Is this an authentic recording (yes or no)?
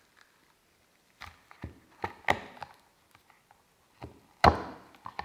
yes